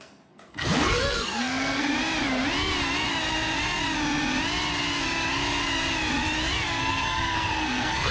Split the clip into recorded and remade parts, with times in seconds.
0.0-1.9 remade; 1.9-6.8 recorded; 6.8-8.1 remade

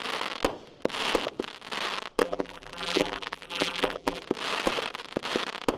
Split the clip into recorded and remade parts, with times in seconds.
0.0-2.2 recorded; 2.2-4.2 remade; 4.2-5.8 recorded

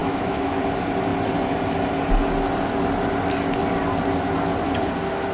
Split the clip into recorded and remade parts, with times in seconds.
0.0-0.6 remade; 0.6-5.3 recorded

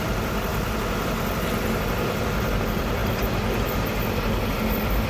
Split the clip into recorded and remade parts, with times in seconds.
0.0-0.5 remade; 0.5-2.6 recorded; 2.6-5.1 remade

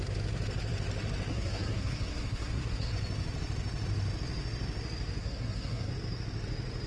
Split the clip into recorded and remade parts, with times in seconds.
0.0-1.3 recorded; 1.3-2.9 remade; 2.9-5.2 recorded; 5.2-5.9 remade; 5.9-6.9 recorded

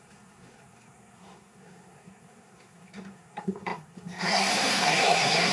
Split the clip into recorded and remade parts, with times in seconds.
0.0-5.5 remade

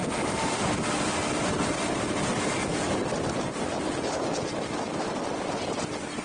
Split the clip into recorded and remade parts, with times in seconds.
0.0-3.5 recorded; 3.5-4.1 remade; 4.1-6.2 recorded